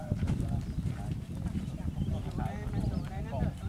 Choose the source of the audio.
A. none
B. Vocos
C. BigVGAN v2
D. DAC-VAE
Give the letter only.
A